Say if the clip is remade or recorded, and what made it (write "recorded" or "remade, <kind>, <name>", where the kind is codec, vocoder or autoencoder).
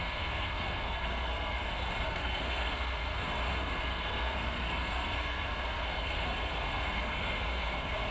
remade, codec, SNAC